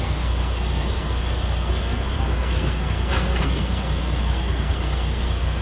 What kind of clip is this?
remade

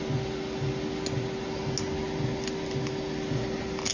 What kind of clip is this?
recorded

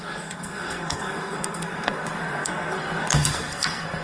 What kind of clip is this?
remade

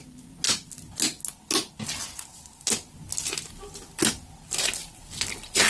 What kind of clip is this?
recorded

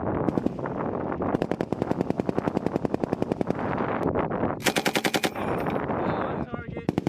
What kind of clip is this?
recorded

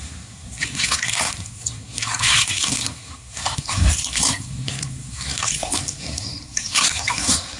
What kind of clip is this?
remade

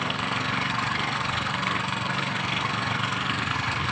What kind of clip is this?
remade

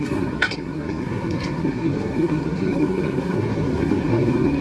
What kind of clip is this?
remade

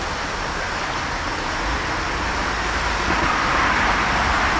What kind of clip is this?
recorded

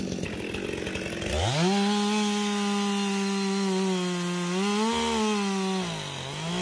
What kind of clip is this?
recorded